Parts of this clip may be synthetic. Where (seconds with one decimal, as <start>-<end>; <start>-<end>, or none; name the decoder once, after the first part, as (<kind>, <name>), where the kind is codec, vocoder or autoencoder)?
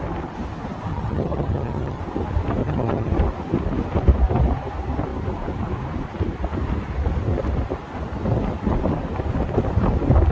0.9-2.0 (vocoder, HiFi-GAN); 2.6-3.1